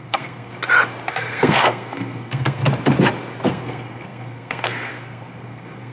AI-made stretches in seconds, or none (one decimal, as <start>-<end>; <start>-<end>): 0.0-0.5; 1.1-2.6; 3.5-5.9